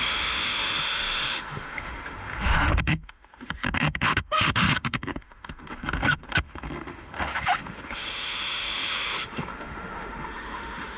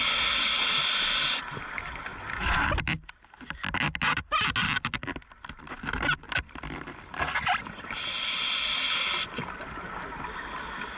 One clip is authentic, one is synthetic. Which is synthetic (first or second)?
first